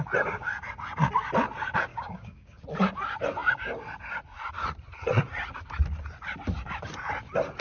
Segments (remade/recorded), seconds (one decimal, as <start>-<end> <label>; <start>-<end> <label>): 0.0-1.9 recorded; 1.9-2.6 remade; 2.6-7.6 recorded